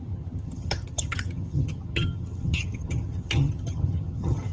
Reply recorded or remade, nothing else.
remade